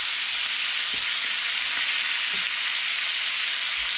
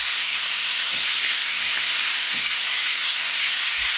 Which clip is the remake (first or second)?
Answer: second